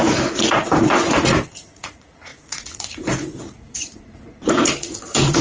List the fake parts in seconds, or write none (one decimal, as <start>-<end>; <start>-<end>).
0.0-5.4